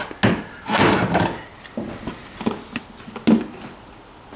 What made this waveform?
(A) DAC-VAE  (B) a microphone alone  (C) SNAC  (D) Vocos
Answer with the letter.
B